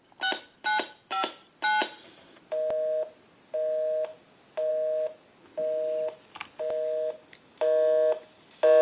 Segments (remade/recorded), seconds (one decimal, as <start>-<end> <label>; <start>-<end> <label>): 0.0-8.8 recorded

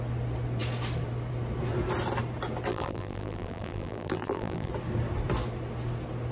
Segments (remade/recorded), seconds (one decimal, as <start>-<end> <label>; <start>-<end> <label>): 0.0-2.7 recorded; 2.7-4.7 remade; 4.7-6.3 recorded

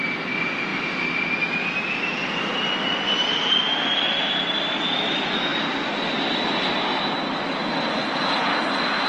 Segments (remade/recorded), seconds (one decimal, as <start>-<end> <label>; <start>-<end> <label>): 0.0-9.1 recorded

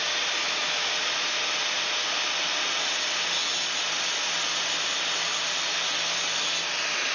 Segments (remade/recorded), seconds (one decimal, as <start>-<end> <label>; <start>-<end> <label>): 0.0-0.4 recorded; 0.4-0.9 remade; 0.9-7.1 recorded

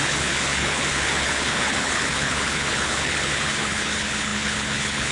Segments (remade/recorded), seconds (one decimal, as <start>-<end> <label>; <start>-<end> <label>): 0.0-5.1 remade

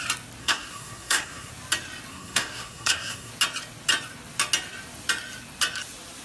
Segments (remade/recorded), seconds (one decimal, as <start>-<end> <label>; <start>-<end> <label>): 0.0-0.4 recorded; 0.4-1.5 remade; 1.5-2.1 recorded; 2.1-3.3 remade; 3.3-6.2 recorded